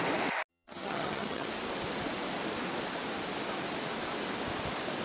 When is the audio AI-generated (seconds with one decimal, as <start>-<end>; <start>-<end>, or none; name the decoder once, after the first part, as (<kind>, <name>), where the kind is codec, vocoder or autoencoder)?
0.5-1.5 (vocoder, HiFi-GAN)